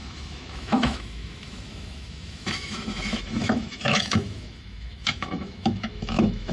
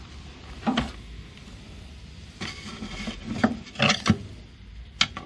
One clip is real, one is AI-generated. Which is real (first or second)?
second